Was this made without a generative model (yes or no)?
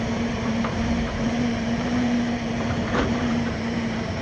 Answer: no